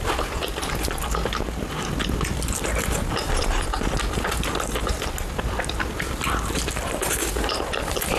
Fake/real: real